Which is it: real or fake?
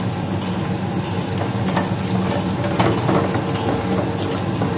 real